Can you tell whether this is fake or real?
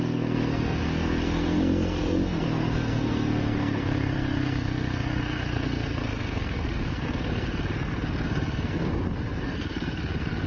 fake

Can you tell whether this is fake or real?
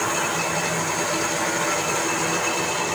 real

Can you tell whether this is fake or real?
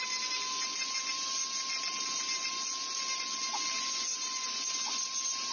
real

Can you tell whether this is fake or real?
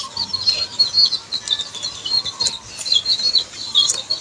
real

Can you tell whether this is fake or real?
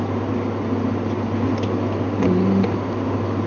real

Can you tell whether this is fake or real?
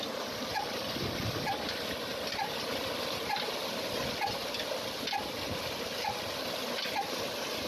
real